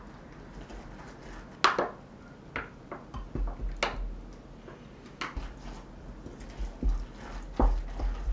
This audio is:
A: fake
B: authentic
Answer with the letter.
B